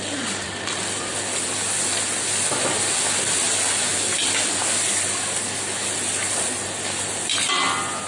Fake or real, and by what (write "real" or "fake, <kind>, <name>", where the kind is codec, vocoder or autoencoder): real